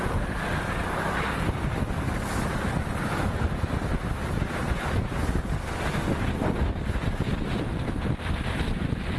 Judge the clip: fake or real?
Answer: real